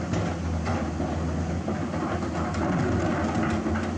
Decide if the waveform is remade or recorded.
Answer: recorded